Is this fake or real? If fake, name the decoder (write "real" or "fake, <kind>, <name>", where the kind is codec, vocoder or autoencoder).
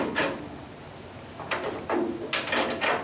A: real